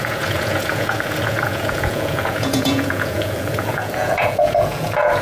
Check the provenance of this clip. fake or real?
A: fake